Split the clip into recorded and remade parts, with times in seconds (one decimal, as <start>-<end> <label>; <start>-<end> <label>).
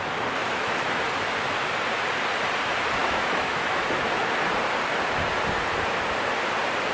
0.0-0.4 recorded; 0.4-1.0 remade; 1.0-3.0 recorded; 3.0-3.9 remade; 3.9-6.9 recorded